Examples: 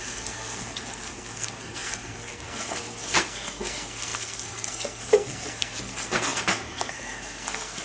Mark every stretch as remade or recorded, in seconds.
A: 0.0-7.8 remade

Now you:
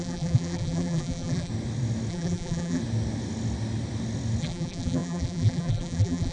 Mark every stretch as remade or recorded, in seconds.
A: 0.0-1.5 remade; 1.5-2.1 recorded; 2.1-2.8 remade; 2.8-4.4 recorded; 4.4-6.3 remade

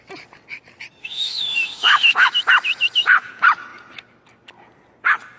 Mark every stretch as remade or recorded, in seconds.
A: 0.0-1.0 recorded; 1.0-2.3 remade; 2.3-5.4 recorded

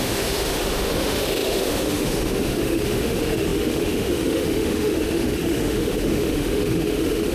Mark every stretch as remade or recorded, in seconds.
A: 0.0-7.3 remade

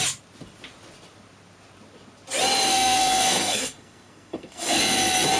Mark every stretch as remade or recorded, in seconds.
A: 0.0-2.7 recorded; 2.7-4.8 remade; 4.8-5.4 recorded

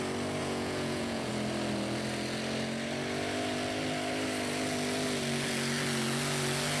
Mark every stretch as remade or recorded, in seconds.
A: 0.0-0.4 recorded; 0.4-1.3 remade; 1.3-6.8 recorded

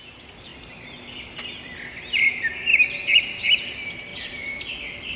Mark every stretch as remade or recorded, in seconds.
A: 0.0-5.2 recorded